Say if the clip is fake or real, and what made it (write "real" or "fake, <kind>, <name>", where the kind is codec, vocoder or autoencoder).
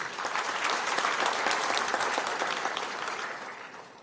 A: fake, vocoder, BigVGAN v2